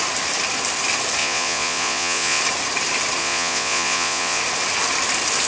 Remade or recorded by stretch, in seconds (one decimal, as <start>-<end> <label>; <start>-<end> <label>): 0.0-1.2 recorded; 1.2-2.4 remade; 2.4-3.2 recorded; 3.2-4.4 remade; 4.4-5.5 recorded